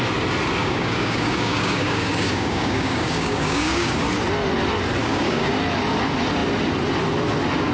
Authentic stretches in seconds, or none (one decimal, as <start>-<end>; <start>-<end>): 0.0-0.6; 3.9-5.0; 5.5-7.7